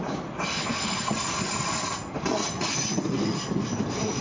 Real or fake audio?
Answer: real